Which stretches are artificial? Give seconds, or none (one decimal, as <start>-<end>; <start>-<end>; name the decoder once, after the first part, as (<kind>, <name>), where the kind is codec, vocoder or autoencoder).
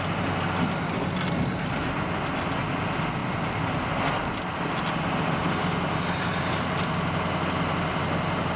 none